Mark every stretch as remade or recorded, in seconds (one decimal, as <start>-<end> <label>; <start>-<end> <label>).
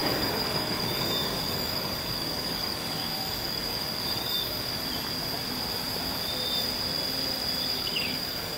0.0-4.8 remade; 4.8-7.6 recorded; 7.6-8.6 remade